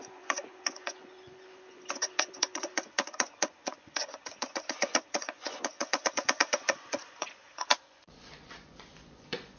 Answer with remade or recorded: remade